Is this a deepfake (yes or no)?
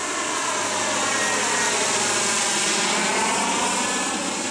no